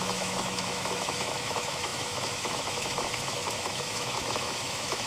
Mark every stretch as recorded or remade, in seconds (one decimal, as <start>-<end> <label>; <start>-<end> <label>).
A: 0.0-5.1 remade